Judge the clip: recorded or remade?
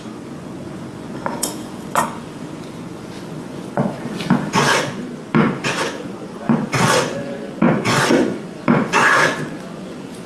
remade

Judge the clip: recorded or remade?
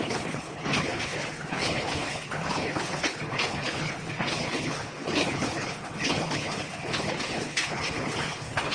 remade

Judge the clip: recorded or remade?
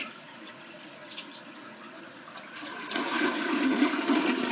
remade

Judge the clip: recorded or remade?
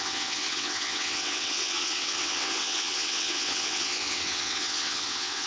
remade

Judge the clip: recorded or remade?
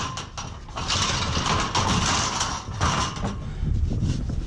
recorded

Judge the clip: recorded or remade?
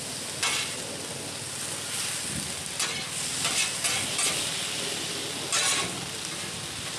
recorded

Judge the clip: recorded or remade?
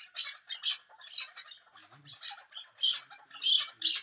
recorded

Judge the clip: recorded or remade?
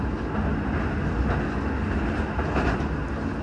recorded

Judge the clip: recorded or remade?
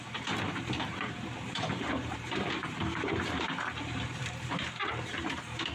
remade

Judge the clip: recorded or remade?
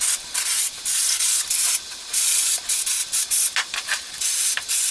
recorded